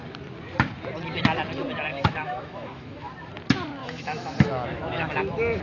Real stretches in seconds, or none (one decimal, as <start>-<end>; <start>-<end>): 0.0-1.9; 3.1-3.8